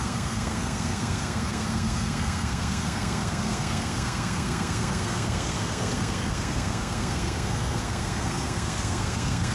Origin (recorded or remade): remade